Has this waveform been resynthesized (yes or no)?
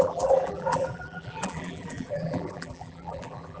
yes